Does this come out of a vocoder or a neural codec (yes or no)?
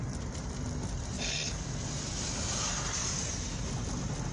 no